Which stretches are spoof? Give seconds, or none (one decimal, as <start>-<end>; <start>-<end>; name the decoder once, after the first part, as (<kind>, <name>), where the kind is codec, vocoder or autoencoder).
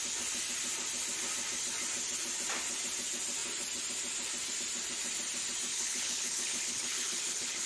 5.7-7.7 (codec, HILCodec)